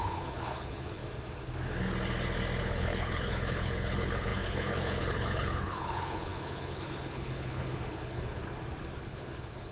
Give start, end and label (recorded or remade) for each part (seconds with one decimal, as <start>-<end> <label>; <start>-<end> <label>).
0.0-1.0 remade; 1.0-2.6 recorded; 2.6-8.4 remade; 8.4-9.1 recorded; 9.1-9.7 remade